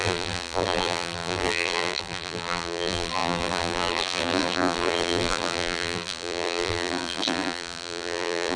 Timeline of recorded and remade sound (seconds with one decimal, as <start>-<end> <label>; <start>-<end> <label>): 0.0-8.6 remade